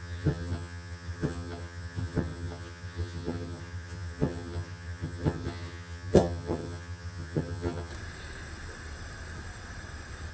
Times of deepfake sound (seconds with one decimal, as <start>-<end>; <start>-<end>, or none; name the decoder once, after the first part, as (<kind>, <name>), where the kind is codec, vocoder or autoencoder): 0.0-7.9 (vocoder, HiFi-GAN)